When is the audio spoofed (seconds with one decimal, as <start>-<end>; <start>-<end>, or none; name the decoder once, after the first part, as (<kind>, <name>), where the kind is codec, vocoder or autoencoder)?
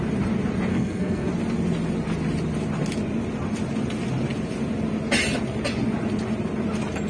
0.7-1.3 (codec, SNAC)